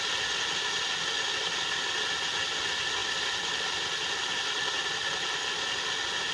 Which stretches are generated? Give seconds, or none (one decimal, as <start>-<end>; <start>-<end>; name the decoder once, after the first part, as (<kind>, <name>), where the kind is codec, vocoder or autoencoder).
none